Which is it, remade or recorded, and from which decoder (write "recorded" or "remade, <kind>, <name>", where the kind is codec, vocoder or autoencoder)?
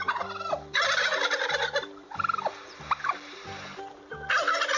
recorded